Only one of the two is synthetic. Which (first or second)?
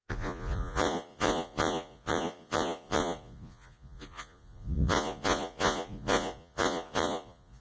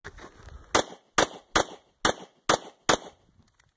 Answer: first